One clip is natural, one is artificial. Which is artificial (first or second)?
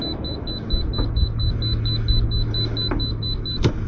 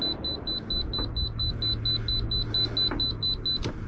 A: first